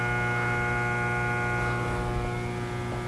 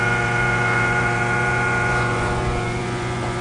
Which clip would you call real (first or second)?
first